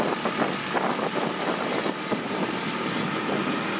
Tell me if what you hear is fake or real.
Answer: real